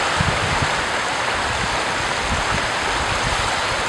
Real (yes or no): yes